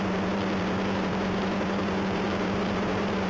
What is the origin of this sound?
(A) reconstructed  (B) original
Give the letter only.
A